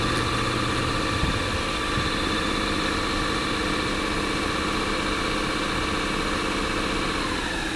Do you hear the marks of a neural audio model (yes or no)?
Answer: no